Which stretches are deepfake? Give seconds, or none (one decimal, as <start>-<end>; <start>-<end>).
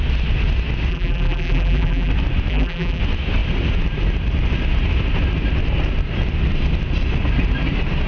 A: 0.9-2.1; 2.5-3.0